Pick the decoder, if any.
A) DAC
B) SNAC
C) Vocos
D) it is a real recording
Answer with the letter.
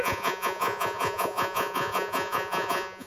C